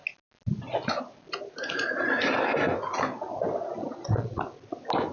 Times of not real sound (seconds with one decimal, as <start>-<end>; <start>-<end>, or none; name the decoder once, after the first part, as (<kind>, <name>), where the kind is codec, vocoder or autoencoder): 3.8-4.4 (vocoder, Vocos)